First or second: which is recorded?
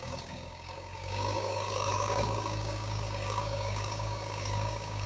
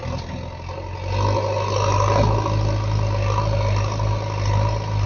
second